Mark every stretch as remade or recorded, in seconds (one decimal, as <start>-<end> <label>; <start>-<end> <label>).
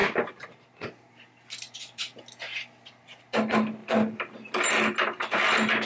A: 0.0-0.8 remade; 0.8-3.8 recorded; 3.8-5.4 remade; 5.4-5.9 recorded